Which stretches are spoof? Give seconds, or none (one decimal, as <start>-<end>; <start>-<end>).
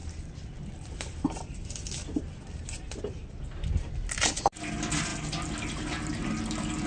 0.0-3.4; 5.1-6.4